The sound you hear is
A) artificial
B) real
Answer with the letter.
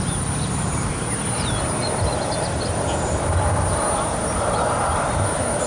B